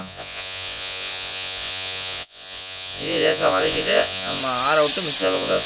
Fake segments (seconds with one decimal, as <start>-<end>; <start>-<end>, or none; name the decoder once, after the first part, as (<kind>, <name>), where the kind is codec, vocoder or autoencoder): 0.0-4.4 (vocoder, Vocos); 5.2-5.7